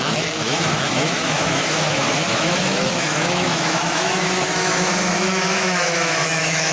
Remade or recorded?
remade